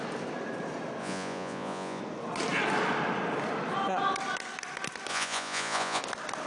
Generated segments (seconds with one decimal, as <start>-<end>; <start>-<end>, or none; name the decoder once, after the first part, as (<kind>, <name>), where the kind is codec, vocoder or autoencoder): 1.0-2.0 (vocoder, Vocos); 5.1-6.0